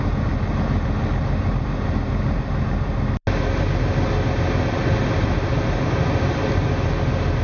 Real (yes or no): yes